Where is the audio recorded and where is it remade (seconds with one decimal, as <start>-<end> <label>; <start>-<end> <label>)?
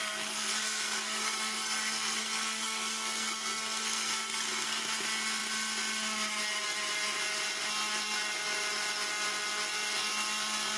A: 0.0-4.8 remade; 4.8-10.8 recorded